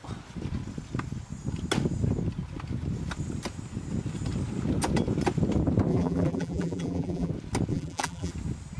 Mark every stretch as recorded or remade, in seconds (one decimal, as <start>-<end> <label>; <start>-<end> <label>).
0.0-5.9 recorded; 5.9-7.3 remade; 7.3-7.7 recorded; 7.7-8.3 remade; 8.3-8.8 recorded